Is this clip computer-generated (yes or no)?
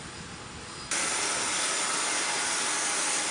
no